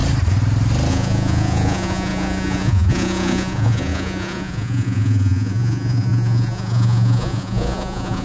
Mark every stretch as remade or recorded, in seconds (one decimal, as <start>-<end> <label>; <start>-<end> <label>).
0.0-0.9 recorded; 0.9-8.2 remade